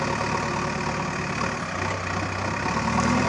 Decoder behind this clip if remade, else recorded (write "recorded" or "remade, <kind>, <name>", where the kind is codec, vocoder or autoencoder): recorded